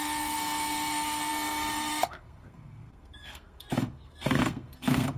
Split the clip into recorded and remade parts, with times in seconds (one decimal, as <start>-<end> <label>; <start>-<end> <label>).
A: 0.0-5.2 remade